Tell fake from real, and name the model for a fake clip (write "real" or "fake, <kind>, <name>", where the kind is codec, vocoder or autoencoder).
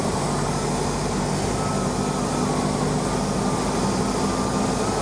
real